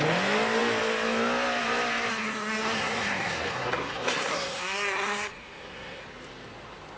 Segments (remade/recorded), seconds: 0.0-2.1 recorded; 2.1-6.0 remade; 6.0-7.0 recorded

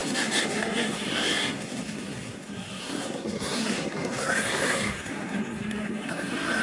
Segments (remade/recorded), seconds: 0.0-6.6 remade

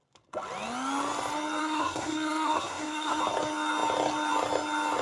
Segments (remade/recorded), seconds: 0.0-1.6 recorded; 1.6-3.2 remade; 3.2-5.0 recorded